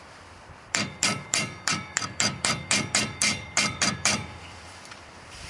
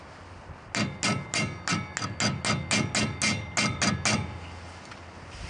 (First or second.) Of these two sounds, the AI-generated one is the first